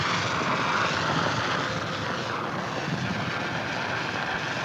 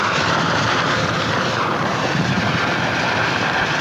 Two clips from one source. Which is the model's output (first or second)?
second